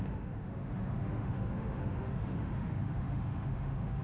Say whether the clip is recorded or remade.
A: remade